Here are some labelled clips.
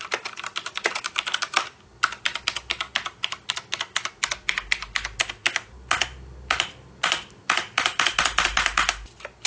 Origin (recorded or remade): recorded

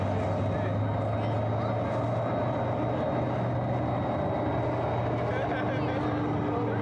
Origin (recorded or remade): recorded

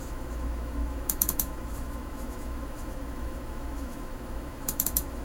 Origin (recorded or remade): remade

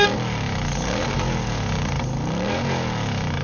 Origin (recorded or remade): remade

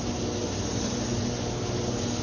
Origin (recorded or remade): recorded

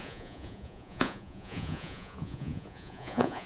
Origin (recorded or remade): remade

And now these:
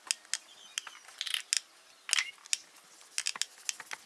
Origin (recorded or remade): recorded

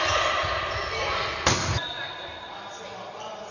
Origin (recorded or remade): recorded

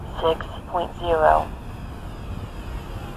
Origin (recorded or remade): recorded